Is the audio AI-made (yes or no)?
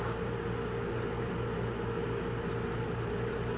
no